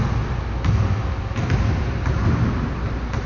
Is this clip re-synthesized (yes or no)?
no